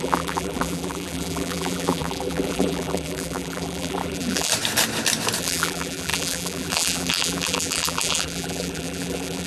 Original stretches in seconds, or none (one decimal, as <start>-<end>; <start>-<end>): 4.5-5.4